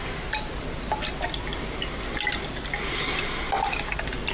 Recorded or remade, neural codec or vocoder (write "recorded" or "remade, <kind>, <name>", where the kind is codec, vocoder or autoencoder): recorded